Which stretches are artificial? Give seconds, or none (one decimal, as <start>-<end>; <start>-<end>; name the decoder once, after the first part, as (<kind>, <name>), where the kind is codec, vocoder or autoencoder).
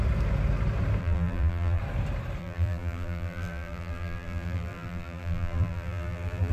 1.0-1.8 (vocoder, BigVGAN v2); 2.4-6.5